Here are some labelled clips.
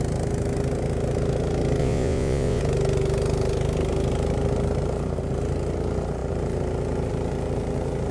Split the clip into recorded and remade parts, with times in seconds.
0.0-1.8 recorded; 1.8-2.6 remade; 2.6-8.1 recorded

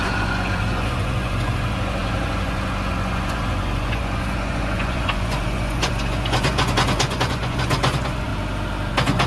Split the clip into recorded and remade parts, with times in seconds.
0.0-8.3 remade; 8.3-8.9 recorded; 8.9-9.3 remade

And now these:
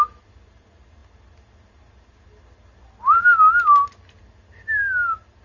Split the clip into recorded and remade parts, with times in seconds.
0.0-5.4 recorded

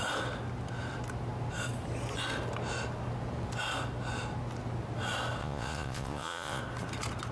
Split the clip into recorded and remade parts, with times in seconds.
0.0-5.4 recorded; 5.4-6.6 remade; 6.6-7.3 recorded

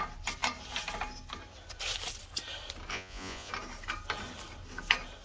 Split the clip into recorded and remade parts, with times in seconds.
0.0-2.9 recorded; 2.9-3.5 remade; 3.5-5.2 recorded

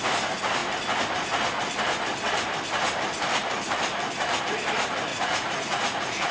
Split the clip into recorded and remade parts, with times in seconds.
0.0-5.1 recorded; 5.1-6.3 remade

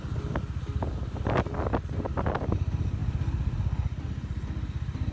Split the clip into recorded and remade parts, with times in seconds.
0.0-5.1 recorded